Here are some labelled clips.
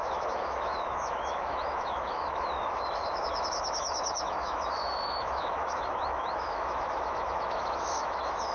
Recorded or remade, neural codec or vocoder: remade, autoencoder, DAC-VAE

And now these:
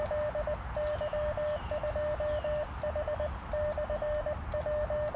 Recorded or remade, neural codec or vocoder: recorded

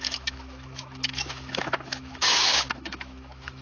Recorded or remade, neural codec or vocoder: remade, autoencoder, DAC-VAE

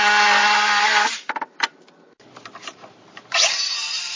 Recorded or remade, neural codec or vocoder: recorded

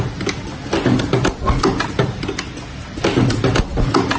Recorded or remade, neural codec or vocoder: recorded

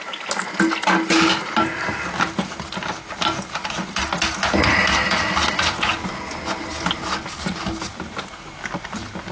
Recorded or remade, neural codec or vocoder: recorded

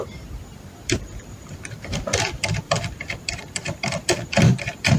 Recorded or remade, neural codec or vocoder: remade, vocoder, BigVGAN v2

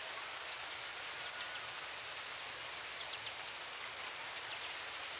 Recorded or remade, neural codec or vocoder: recorded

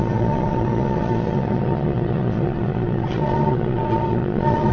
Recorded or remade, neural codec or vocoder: remade, vocoder, Vocos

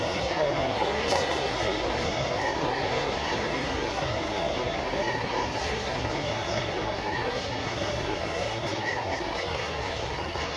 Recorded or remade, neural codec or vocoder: remade, codec, SNAC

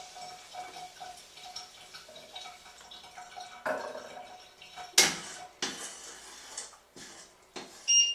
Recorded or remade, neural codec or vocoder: recorded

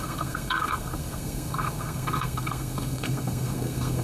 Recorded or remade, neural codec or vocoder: remade, codec, SNAC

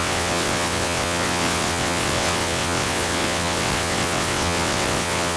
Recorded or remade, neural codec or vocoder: remade, vocoder, WaveNeXt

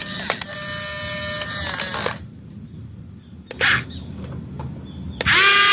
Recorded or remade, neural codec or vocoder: recorded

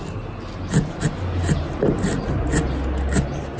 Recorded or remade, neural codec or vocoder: recorded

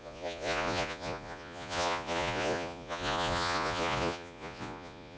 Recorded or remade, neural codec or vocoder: remade, vocoder, Vocos